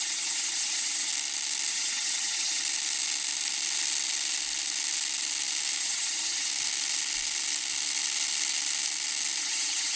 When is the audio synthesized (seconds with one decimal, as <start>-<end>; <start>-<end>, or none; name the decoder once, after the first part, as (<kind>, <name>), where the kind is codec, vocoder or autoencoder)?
0.0-1.1 (vocoder, HiFi-GAN); 1.7-2.6; 5.8-6.5; 9.4-10.0